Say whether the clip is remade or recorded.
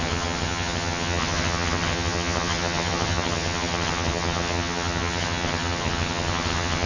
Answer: remade